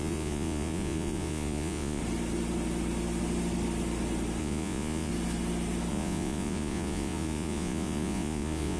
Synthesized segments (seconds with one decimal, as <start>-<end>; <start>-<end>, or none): 0.0-2.0; 4.4-5.1; 5.9-8.8